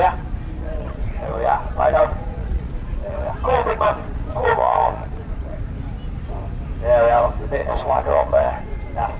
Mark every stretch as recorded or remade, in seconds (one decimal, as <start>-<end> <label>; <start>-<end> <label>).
0.0-0.6 recorded; 0.6-5.6 remade; 5.6-7.6 recorded; 7.6-9.2 remade